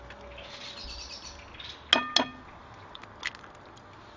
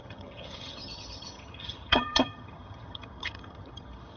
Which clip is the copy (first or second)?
second